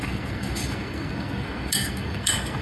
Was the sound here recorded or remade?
remade